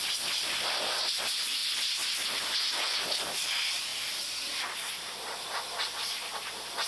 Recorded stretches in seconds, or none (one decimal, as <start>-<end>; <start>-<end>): 0.0-6.9